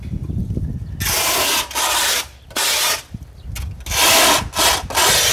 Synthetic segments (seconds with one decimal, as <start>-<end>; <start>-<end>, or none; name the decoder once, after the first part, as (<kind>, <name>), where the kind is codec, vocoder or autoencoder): 0.4-3.1 (vocoder, BigVGAN v2)